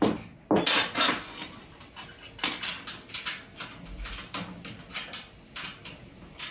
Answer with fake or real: real